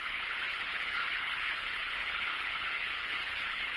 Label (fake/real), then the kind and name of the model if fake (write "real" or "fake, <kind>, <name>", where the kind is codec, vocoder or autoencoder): fake, codec, HILCodec